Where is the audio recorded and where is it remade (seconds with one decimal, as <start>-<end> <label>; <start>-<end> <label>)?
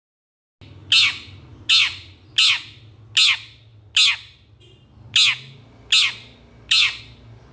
0.0-7.5 recorded